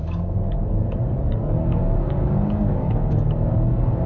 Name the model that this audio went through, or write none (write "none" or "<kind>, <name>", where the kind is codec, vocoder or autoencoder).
codec, DAC